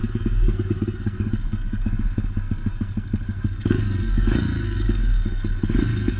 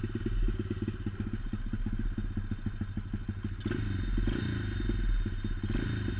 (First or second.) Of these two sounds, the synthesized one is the first